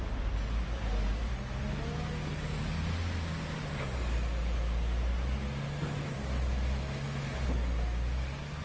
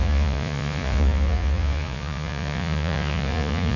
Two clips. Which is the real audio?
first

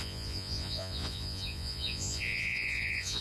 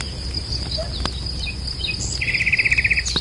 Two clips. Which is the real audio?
second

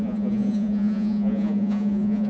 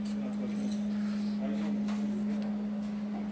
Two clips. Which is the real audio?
second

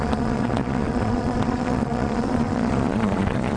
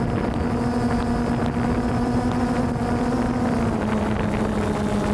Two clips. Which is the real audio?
second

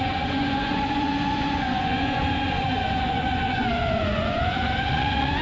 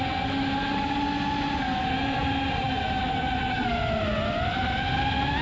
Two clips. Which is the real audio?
second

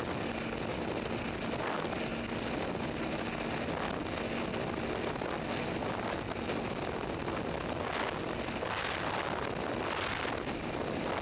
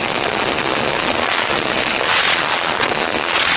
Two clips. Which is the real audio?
first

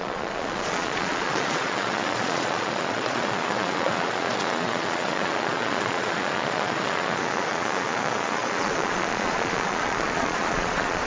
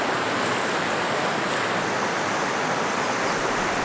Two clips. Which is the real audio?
second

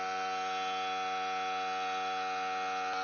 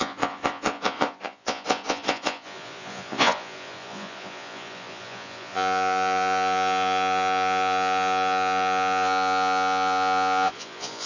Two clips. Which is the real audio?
first